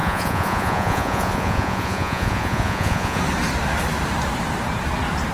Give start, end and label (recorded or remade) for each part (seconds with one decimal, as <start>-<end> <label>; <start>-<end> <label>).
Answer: 0.0-3.2 remade; 3.2-5.3 recorded